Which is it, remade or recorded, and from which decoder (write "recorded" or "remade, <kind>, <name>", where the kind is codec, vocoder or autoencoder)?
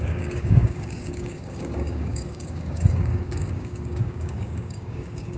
remade, codec, DAC